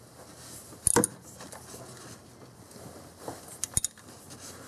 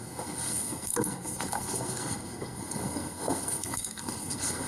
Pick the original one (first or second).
first